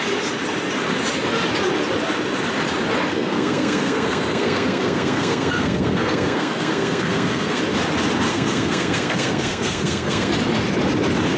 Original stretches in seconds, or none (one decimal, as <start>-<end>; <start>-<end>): 0.0-3.1; 7.6-8.3; 10.3-11.4

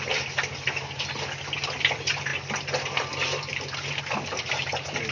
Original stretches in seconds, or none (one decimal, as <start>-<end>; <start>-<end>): 0.0-5.1

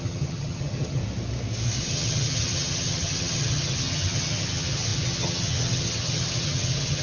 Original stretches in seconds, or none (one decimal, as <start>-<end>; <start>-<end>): 1.0-1.8

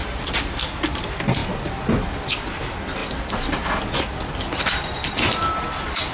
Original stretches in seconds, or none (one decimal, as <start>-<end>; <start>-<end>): 0.0-0.8; 1.4-2.5; 3.0-4.0

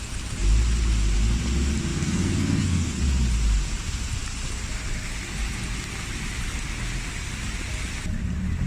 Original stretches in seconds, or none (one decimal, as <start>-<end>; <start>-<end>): 0.0-1.9; 3.0-8.7

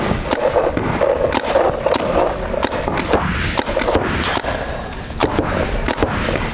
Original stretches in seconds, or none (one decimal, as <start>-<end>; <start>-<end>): 0.0-6.5